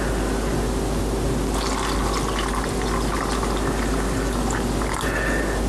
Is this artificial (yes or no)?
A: no